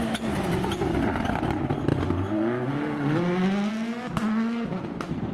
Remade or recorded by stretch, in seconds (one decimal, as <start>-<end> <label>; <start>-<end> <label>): 0.0-5.3 recorded